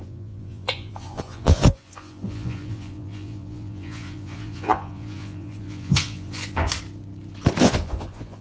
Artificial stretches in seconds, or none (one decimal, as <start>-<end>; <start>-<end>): 0.0-6.7; 7.6-8.4